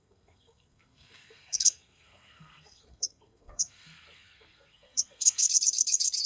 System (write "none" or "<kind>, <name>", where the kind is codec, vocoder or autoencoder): codec, SNAC